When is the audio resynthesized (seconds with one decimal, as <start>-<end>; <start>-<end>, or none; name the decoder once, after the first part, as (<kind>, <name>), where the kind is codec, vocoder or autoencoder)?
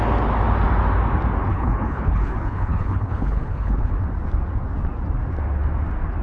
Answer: 1.5-3.9 (codec, HILCodec)